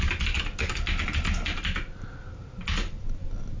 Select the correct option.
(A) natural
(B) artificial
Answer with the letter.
A